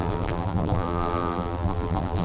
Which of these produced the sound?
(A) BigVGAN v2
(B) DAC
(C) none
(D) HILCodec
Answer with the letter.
A